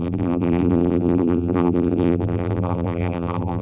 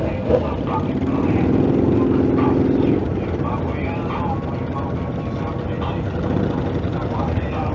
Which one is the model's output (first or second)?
first